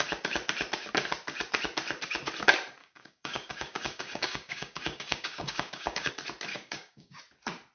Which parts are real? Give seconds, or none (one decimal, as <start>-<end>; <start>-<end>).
0.0-2.8; 6.1-6.5; 7.2-7.7